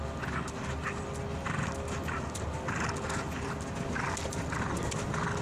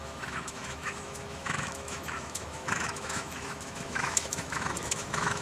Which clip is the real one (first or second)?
first